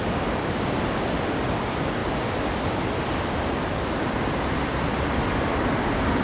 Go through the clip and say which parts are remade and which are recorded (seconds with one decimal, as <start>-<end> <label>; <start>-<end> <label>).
0.0-6.2 remade